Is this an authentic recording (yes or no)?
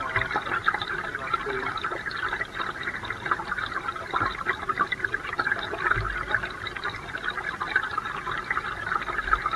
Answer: yes